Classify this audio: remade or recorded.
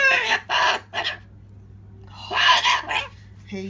recorded